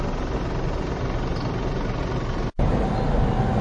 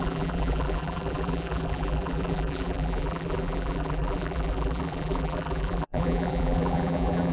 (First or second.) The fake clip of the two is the second